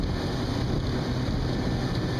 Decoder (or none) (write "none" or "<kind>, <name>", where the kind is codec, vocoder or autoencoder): none